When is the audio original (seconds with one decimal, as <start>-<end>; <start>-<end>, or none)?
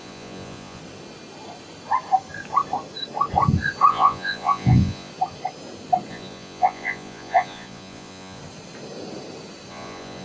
0.8-3.9; 5.1-6.1; 8.4-9.7